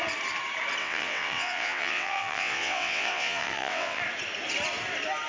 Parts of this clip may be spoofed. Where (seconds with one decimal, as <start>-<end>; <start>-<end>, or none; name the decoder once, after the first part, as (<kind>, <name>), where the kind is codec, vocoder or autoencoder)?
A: 0.8-4.0 (vocoder, WaveNeXt)